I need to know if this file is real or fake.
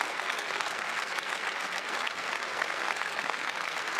fake